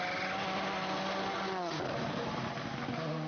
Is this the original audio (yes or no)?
yes